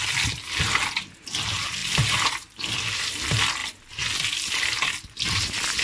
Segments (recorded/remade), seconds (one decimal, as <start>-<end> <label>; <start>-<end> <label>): 0.0-5.8 recorded